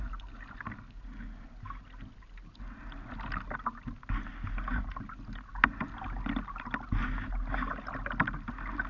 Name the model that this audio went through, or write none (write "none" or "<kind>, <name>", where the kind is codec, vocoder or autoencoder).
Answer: none